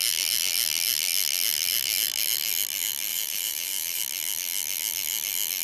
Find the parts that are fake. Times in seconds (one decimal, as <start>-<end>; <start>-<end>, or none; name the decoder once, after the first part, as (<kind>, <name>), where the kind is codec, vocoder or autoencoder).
3.1-4.0 (vocoder, BigVGAN v2)